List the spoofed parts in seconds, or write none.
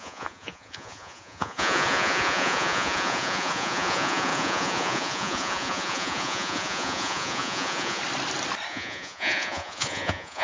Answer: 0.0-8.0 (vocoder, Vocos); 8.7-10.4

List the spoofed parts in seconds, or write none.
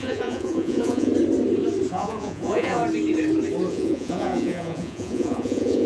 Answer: 0.0-1.1 (vocoder, Vocos); 1.9-2.8; 3.7-5.9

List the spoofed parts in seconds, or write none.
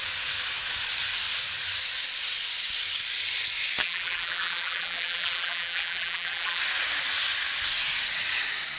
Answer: 3.8-6.6 (vocoder, BigVGAN v2)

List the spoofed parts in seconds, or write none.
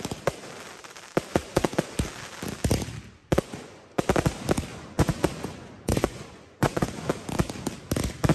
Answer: 1.3-1.9 (vocoder, Vocos); 3.2-4.0; 4.7-7.1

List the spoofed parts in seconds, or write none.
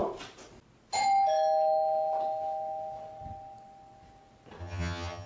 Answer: 4.6-5.3 (vocoder, HiFi-GAN)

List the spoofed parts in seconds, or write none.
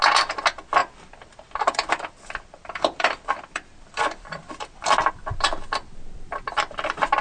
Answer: 0.8-5.1 (vocoder, BigVGAN v2)